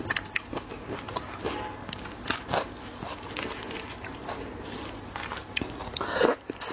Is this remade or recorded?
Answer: recorded